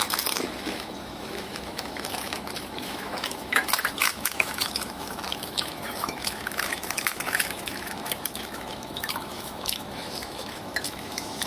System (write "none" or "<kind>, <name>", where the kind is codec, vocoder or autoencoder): autoencoder, DAC-VAE